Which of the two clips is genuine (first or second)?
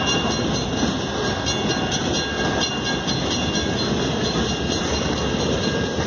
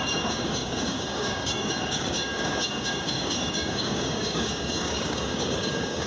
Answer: first